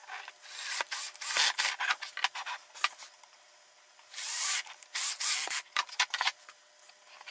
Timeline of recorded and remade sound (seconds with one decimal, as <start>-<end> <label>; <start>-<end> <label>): 0.0-2.6 recorded; 2.6-6.6 remade; 6.6-7.3 recorded